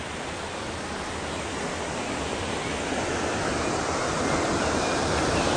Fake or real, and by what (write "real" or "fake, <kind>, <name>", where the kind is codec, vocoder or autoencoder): real